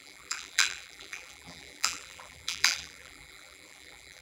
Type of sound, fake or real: fake